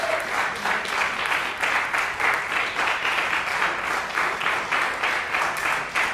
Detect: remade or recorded recorded